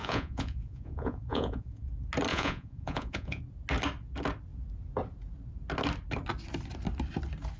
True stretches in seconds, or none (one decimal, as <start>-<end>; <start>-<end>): 1.9-2.3; 3.4-7.6